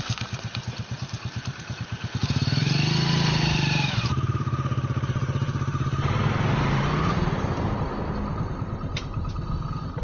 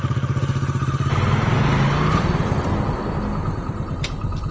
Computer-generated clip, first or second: first